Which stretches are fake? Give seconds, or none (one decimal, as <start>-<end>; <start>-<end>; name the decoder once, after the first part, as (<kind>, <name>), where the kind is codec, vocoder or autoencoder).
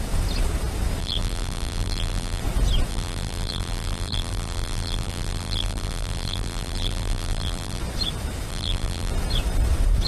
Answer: 1.0-2.4 (vocoder, BigVGAN v2); 2.9-7.8; 8.5-9.1